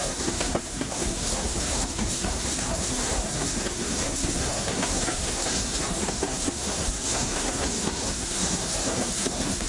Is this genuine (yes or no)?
no